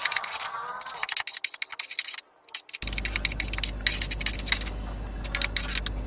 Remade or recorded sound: recorded